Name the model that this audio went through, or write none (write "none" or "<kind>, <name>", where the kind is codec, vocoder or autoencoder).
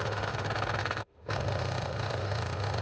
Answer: autoencoder, DAC-VAE